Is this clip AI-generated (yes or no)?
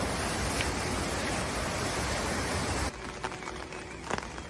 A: no